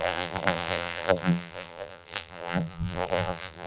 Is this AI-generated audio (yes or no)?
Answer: yes